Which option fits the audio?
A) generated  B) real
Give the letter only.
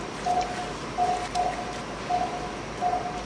B